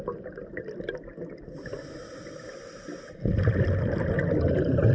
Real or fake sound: real